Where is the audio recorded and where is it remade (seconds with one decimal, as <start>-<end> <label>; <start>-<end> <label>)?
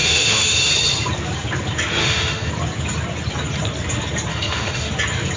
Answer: 0.0-0.7 remade; 0.7-2.0 recorded; 2.0-2.5 remade; 2.5-4.3 recorded; 4.3-4.9 remade; 4.9-5.4 recorded